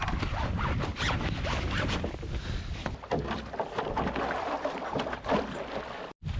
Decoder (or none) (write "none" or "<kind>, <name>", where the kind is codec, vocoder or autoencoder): none